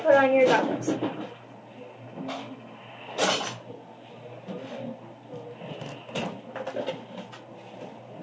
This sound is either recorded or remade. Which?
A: recorded